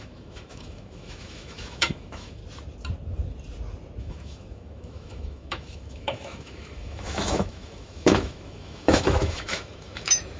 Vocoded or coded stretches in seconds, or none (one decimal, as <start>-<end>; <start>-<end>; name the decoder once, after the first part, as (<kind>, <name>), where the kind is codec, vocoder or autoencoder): 0.0-2.4 (autoencoder, DAC-VAE); 4.0-10.4

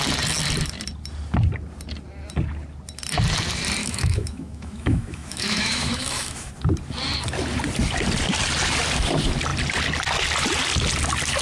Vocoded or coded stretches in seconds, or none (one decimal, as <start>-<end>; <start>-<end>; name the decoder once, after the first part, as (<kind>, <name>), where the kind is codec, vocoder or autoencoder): 3.8-6.5 (autoencoder, DAC-VAE)

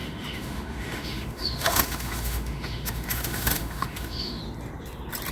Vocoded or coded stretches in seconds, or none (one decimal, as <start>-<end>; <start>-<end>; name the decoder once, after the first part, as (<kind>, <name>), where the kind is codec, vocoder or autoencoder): 0.0-4.4 (autoencoder, DAC-VAE)

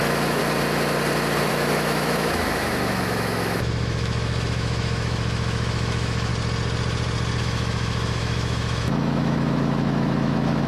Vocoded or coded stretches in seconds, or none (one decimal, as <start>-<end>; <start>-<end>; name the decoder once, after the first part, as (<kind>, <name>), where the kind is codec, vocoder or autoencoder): 0.0-0.4 (autoencoder, DAC-VAE); 1.5-6.3; 7.4-10.7

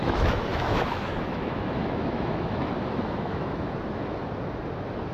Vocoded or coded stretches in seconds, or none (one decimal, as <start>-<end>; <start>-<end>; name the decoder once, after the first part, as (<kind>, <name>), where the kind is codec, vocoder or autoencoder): 0.0-4.2 (autoencoder, DAC-VAE)

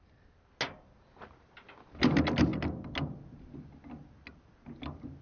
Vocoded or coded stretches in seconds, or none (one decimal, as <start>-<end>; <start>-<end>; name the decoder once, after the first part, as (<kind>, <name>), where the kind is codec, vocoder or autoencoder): none

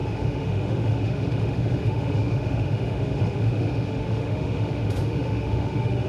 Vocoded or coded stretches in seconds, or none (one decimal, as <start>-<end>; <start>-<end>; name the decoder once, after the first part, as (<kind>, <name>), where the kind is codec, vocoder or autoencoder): 0.0-6.1 (autoencoder, DAC-VAE)